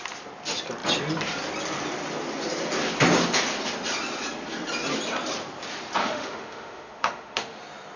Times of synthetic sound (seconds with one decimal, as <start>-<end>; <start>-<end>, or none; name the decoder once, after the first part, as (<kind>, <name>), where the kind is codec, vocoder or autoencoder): 6.0-7.6 (autoencoder, DAC-VAE)